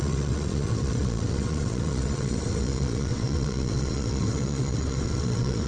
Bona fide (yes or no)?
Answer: no